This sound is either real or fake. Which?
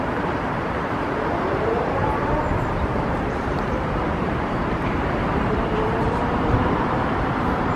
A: fake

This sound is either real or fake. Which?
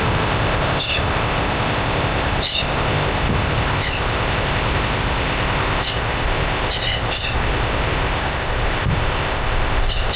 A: fake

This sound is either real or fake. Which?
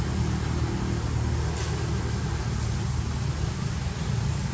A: real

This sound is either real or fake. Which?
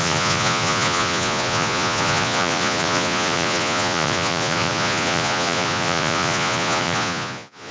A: fake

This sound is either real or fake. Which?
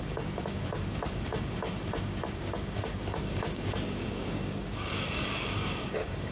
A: fake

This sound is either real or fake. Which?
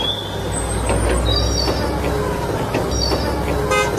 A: real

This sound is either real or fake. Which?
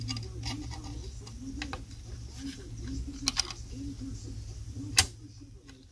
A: real